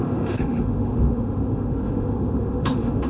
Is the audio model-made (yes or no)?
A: yes